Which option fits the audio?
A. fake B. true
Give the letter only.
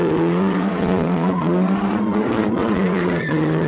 A